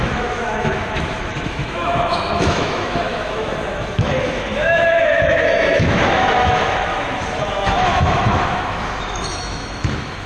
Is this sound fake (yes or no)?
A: yes